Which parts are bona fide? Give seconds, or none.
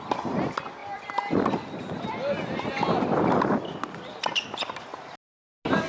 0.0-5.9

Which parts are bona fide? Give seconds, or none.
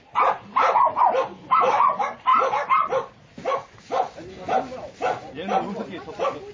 0.0-6.5